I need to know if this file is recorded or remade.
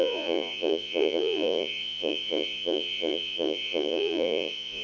remade